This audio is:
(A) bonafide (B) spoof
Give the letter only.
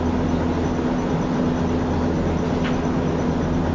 A